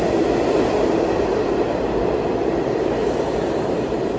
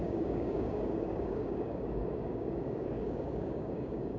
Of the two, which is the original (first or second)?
first